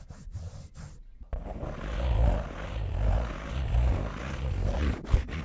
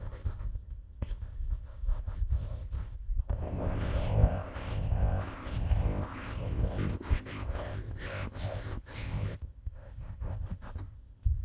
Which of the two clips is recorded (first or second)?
first